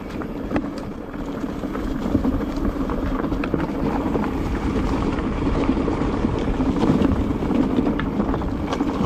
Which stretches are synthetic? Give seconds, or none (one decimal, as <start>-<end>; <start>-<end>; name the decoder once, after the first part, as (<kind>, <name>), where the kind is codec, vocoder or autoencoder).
0.0-7.3 (vocoder, BigVGAN v2)